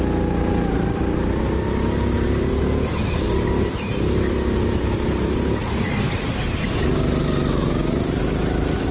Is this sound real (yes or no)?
yes